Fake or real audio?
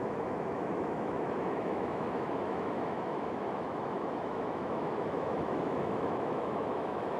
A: fake